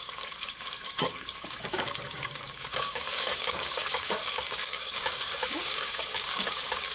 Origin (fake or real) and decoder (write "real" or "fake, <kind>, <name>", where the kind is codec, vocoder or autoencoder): fake, codec, DAC